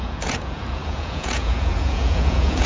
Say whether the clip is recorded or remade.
remade